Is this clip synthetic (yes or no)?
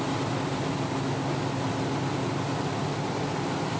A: no